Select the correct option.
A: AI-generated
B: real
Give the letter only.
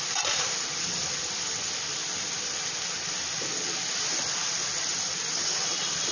B